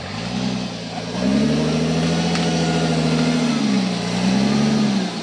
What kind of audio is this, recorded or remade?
recorded